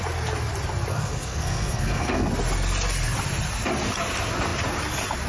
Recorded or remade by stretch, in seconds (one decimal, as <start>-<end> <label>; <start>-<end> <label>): 0.0-0.9 recorded; 0.9-2.3 remade; 2.3-5.3 recorded